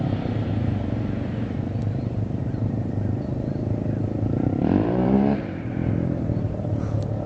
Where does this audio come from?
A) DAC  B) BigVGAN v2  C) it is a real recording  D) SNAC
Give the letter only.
B